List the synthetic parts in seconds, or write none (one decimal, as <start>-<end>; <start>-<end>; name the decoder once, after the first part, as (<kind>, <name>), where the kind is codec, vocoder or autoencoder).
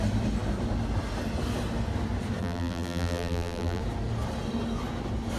2.4-3.8 (vocoder, BigVGAN v2)